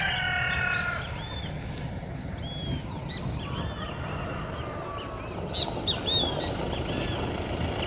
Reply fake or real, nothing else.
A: real